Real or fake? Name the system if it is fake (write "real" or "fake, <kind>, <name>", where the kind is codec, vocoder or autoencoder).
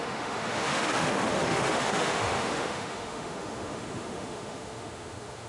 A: fake, autoencoder, DAC-VAE